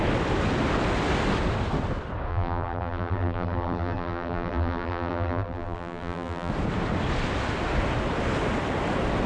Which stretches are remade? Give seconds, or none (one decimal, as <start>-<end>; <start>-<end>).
2.3-6.5